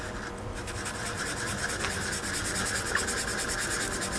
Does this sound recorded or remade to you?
recorded